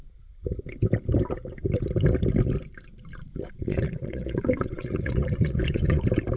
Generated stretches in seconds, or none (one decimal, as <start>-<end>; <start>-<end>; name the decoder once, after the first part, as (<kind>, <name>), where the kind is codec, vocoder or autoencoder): 3.2-6.0 (vocoder, Vocos)